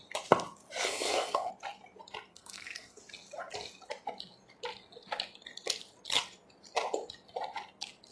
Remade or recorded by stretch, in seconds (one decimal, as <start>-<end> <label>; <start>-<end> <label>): 0.0-0.8 recorded; 0.8-1.5 remade; 1.5-2.3 recorded; 2.3-3.0 remade; 3.0-8.1 recorded